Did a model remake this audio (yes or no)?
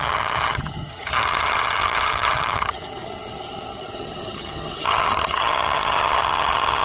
yes